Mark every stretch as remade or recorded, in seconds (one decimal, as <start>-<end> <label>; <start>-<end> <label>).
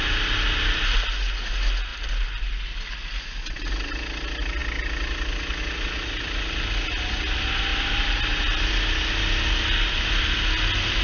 0.0-11.0 recorded